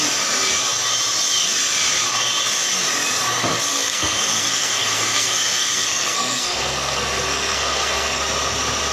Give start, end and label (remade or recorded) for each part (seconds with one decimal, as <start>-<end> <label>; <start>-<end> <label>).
0.0-3.7 recorded; 3.7-8.2 remade; 8.2-8.9 recorded